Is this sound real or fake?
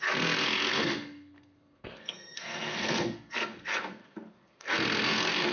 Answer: fake